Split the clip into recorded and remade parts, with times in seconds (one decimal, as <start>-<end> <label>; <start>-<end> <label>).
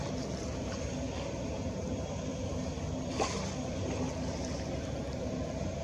0.0-5.8 recorded